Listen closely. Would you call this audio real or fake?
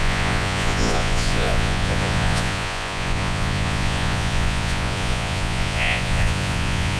fake